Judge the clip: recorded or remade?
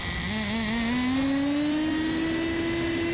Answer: recorded